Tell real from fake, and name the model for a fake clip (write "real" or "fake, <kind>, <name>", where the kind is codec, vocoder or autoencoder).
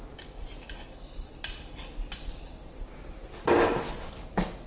real